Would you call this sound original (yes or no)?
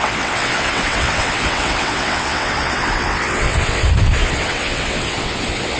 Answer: no